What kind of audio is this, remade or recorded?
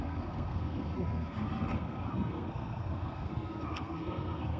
remade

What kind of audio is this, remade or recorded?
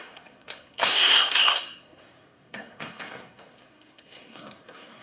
remade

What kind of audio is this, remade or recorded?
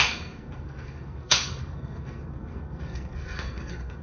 remade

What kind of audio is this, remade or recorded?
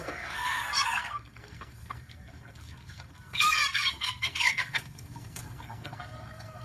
remade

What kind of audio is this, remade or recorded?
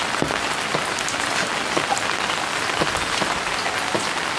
recorded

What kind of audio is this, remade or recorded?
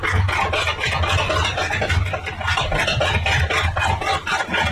recorded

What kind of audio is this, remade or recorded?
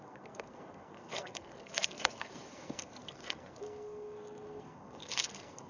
remade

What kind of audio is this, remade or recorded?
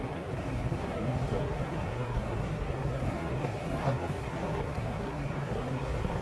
remade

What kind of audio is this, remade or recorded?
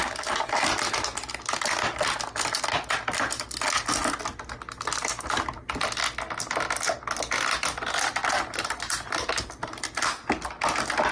recorded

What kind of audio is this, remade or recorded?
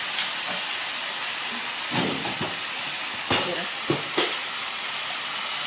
recorded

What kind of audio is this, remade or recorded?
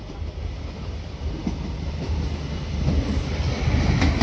recorded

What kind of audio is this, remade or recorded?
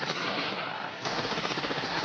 remade